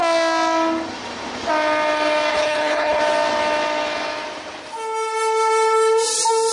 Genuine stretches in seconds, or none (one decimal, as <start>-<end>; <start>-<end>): 0.0-2.3; 3.0-6.5